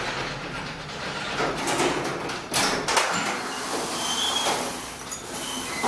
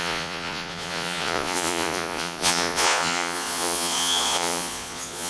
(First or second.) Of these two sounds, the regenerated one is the second